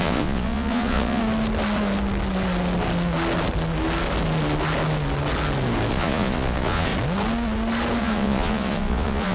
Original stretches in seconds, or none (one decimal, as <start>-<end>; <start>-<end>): 1.2-5.9; 6.9-8.0